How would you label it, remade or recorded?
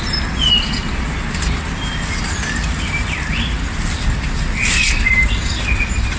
recorded